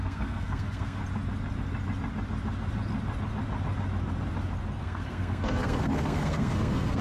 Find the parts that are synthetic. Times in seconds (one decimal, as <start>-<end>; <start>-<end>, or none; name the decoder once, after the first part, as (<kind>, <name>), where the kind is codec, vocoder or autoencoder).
0.0-1.0 (codec, SNAC); 4.8-7.0

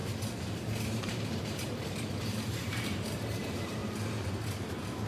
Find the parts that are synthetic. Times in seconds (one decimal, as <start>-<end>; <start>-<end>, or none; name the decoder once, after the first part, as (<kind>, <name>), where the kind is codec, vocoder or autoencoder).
0.6-3.8 (vocoder, BigVGAN v2)

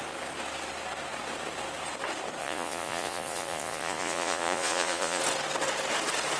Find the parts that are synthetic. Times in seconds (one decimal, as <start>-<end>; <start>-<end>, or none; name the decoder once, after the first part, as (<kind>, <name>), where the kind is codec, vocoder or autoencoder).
2.4-5.2 (vocoder, Vocos)